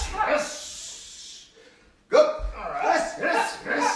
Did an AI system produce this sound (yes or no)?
no